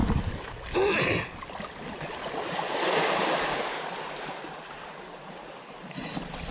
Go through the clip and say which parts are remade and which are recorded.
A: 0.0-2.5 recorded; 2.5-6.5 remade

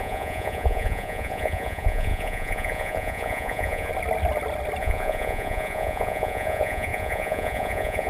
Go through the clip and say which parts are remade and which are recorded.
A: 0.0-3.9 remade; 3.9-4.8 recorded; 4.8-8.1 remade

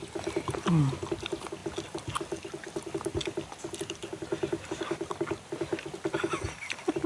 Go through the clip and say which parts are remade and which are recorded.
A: 0.0-4.0 recorded; 4.0-6.2 remade; 6.2-7.1 recorded

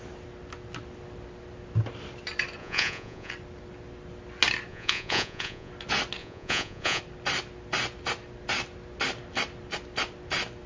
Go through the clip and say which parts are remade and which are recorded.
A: 0.0-2.6 recorded; 2.6-3.3 remade; 3.3-4.7 recorded; 4.7-5.7 remade; 5.7-6.2 recorded; 6.2-7.0 remade; 7.0-10.7 recorded